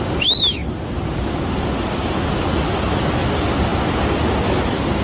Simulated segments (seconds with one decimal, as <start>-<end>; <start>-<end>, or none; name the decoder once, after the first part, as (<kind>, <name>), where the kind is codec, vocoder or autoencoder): none